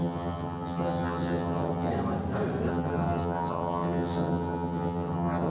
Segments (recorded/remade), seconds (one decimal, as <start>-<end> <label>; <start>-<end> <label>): 0.0-1.9 remade; 1.9-2.7 recorded; 2.7-5.5 remade